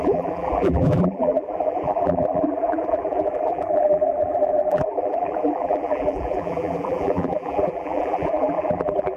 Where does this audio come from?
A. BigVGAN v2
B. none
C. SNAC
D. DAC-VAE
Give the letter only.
A